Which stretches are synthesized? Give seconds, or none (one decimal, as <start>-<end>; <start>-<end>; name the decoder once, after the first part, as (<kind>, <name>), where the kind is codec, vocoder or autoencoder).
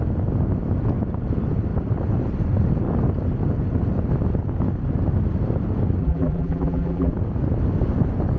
6.0-7.1 (vocoder, BigVGAN v2)